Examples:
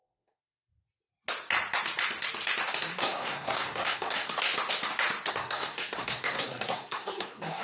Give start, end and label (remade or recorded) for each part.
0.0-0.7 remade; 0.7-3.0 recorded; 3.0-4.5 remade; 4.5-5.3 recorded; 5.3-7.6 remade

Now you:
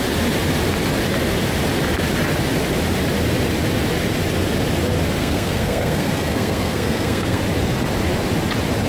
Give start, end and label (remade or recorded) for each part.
0.0-5.2 recorded; 5.2-7.4 remade; 7.4-8.9 recorded

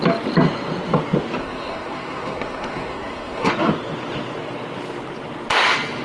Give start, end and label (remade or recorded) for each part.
0.0-1.4 recorded; 1.4-3.5 remade; 3.5-6.0 recorded

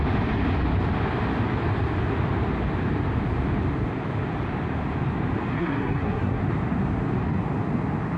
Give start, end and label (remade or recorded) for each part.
0.0-5.5 recorded; 5.5-6.4 remade; 6.4-8.2 recorded

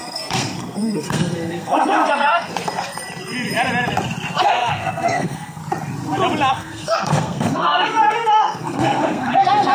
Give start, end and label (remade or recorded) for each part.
0.0-2.5 remade; 2.5-4.4 recorded; 4.4-5.6 remade; 5.6-6.5 recorded; 6.5-9.7 remade